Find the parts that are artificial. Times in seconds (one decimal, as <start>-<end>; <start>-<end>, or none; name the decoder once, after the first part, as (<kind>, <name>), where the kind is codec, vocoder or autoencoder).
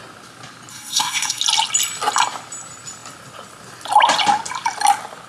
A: 0.7-1.4 (codec, SNAC)